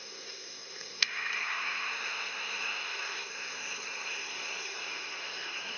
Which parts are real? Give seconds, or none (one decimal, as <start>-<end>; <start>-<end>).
none